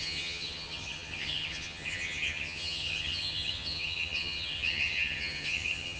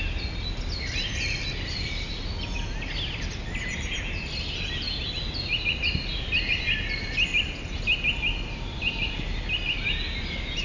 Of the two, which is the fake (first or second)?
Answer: first